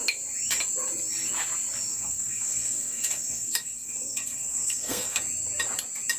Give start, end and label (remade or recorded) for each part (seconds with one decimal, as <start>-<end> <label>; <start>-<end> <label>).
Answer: 0.0-1.9 recorded; 1.9-5.2 remade; 5.2-6.2 recorded

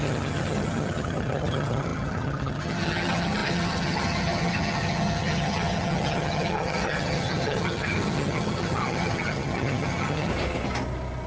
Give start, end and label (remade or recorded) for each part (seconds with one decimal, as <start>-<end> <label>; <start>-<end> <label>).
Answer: 0.0-10.3 remade; 10.3-11.3 recorded

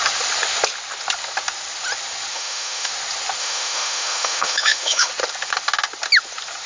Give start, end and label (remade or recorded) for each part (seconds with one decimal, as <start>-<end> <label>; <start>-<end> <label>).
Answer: 0.0-2.3 recorded; 2.3-2.9 remade; 2.9-3.4 recorded; 3.4-5.1 remade; 5.1-6.7 recorded

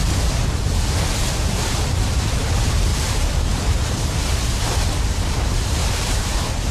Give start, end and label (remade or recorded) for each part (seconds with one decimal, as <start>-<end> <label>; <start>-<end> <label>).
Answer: 0.0-1.7 recorded; 1.7-6.7 remade

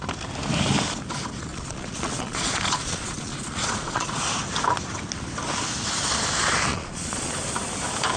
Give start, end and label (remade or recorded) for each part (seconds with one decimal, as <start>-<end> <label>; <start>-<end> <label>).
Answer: 0.0-1.5 recorded; 1.5-4.2 remade; 4.2-6.7 recorded; 6.7-7.3 remade; 7.3-8.2 recorded

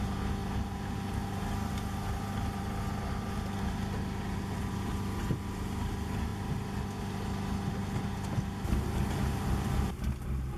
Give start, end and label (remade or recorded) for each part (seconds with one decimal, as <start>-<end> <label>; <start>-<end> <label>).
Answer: 0.0-10.6 recorded